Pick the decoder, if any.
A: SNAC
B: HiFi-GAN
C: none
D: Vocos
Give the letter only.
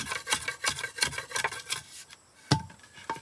C